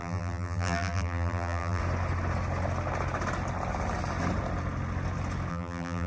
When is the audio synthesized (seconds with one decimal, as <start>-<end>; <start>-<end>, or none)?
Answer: 0.0-1.8; 5.5-6.1